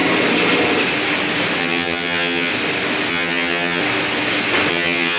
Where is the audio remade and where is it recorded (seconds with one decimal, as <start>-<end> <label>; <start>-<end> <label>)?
0.0-1.6 recorded; 1.6-2.5 remade; 2.5-3.1 recorded; 3.1-3.8 remade; 3.8-4.7 recorded; 4.7-5.2 remade